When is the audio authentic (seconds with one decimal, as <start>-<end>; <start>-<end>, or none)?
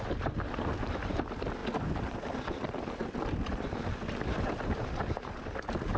0.0-6.0